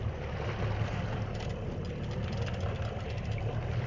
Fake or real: real